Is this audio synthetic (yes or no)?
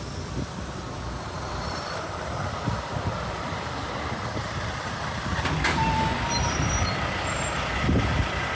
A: yes